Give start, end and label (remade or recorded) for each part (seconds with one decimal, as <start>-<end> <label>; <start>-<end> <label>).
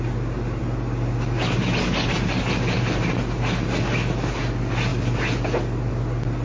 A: 0.0-6.4 recorded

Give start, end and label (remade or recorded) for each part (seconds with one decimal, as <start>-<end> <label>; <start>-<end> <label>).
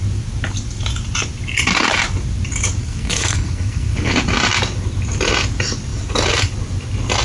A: 0.0-2.8 recorded; 2.8-4.1 remade; 4.1-7.2 recorded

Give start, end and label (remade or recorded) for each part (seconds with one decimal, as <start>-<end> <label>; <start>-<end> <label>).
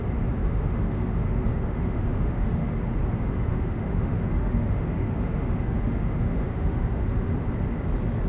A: 0.0-0.4 recorded; 0.4-2.7 remade; 2.7-3.5 recorded; 3.5-7.3 remade; 7.3-8.3 recorded